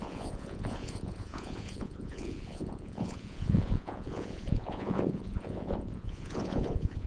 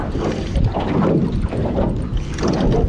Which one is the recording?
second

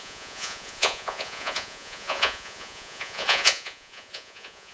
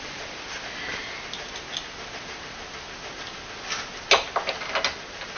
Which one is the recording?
second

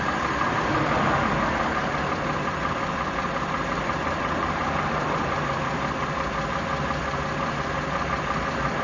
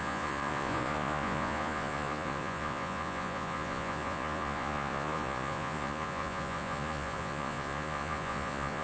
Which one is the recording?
first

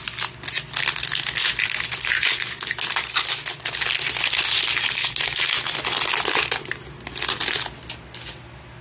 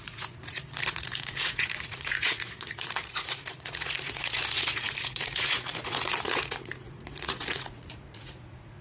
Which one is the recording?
first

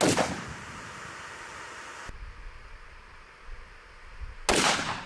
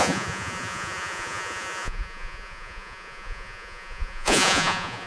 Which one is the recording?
first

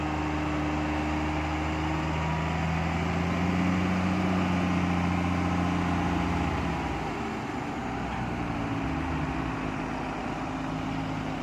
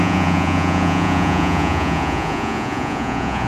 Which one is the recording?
first